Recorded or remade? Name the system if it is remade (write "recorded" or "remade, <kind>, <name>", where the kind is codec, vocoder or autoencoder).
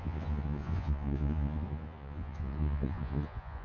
remade, vocoder, Vocos